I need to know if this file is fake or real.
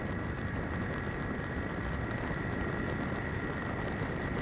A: real